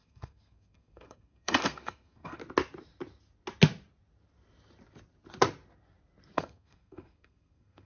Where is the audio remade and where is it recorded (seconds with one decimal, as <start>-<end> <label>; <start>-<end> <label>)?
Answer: 0.0-2.4 remade; 2.4-6.3 recorded; 6.3-7.8 remade